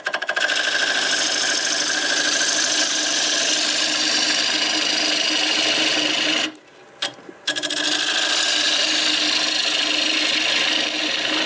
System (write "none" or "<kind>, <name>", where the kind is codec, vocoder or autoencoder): none